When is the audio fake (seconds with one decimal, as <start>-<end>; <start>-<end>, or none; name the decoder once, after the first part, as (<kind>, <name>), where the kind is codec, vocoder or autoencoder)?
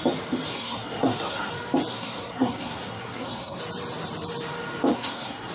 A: 0.5-1.5 (codec, SNAC); 1.9-3.6; 4.9-5.5